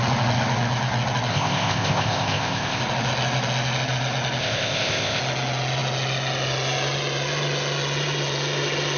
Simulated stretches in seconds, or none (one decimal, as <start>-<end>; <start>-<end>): 1.3-2.8; 4.4-5.2